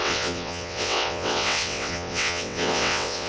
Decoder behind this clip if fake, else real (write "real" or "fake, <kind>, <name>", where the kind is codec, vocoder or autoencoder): fake, vocoder, WaveNeXt